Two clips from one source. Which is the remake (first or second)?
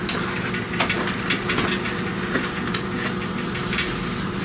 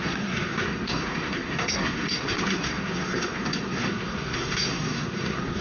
second